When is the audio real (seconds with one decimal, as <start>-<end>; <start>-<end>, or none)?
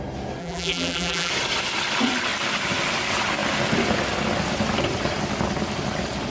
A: 0.0-0.4; 1.3-6.3